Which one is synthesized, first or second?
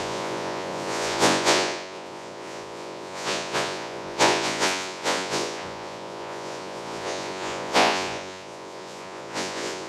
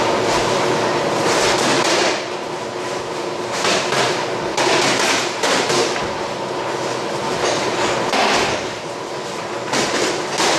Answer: first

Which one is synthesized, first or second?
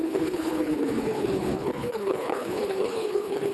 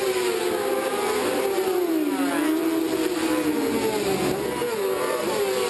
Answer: first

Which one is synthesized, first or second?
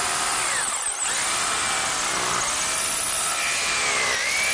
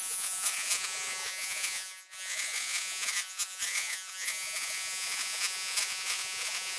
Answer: second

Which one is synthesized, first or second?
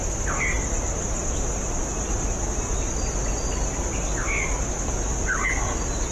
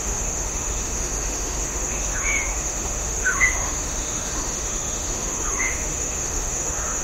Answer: second